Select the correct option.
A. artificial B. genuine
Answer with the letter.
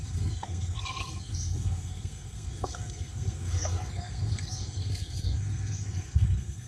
A